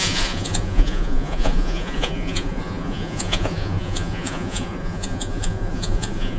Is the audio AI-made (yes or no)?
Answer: yes